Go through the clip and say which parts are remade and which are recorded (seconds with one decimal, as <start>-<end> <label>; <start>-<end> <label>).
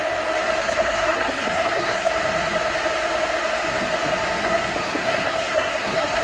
0.0-0.6 recorded; 0.6-2.1 remade; 2.1-4.4 recorded; 4.4-6.2 remade